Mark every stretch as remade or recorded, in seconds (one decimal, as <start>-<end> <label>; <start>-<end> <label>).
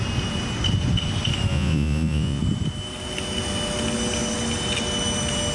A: 0.0-1.5 recorded; 1.5-2.4 remade; 2.4-5.5 recorded